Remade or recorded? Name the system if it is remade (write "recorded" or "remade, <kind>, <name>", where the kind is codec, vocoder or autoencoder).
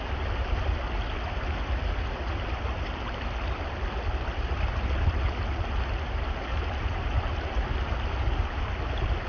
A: recorded